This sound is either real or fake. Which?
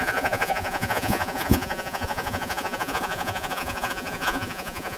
fake